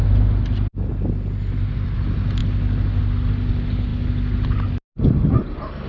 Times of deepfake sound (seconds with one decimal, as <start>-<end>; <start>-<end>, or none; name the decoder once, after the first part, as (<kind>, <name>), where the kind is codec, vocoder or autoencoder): none